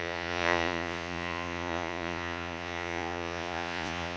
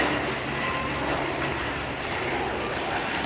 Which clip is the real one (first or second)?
second